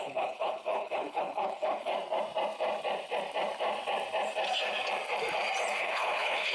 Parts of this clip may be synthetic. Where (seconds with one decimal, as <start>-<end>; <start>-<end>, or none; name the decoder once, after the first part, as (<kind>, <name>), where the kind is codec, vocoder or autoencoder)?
0.0-1.9 (codec, HILCodec); 5.8-6.5